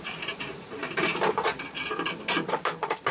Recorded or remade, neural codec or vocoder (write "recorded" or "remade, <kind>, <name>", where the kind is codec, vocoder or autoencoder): remade, vocoder, BigVGAN v2